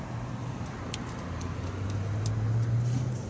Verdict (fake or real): real